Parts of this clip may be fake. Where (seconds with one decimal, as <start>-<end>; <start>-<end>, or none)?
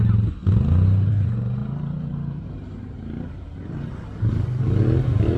1.6-4.6